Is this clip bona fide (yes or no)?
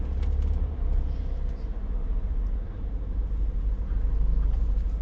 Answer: no